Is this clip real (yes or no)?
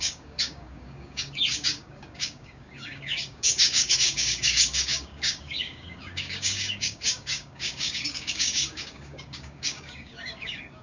no